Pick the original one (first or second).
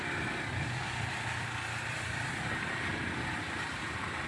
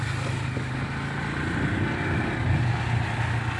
second